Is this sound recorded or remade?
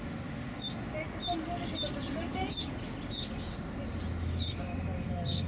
recorded